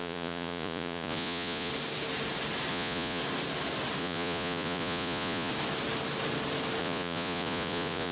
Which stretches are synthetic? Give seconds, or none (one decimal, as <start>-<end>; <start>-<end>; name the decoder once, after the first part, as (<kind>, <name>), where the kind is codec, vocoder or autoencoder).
0.0-1.7 (vocoder, Vocos); 2.7-3.2; 4.0-5.5; 6.8-8.1